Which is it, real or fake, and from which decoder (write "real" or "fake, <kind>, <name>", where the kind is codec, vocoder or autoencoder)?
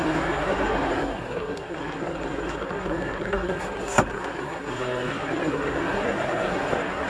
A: fake, codec, SNAC